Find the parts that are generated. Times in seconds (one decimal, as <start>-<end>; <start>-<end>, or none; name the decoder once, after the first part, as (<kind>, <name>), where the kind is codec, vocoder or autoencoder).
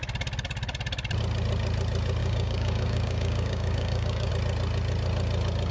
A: 2.2-4.3 (codec, DAC)